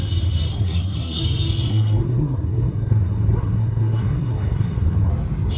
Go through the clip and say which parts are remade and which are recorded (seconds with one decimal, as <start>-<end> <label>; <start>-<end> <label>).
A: 0.0-0.5 recorded; 0.5-1.2 remade; 1.2-1.7 recorded; 1.7-5.1 remade; 5.1-5.6 recorded